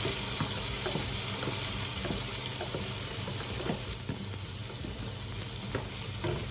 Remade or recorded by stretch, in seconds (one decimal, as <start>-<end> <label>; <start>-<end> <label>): 0.0-2.5 recorded; 2.5-4.0 remade; 4.0-6.5 recorded